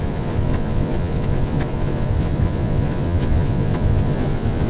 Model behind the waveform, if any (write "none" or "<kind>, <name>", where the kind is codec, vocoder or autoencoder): vocoder, Vocos